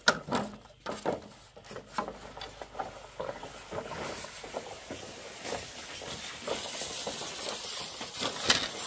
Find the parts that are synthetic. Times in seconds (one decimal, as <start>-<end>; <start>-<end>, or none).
none